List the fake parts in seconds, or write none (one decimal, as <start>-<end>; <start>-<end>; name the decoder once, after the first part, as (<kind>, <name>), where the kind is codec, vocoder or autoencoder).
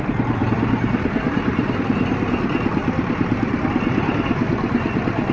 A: none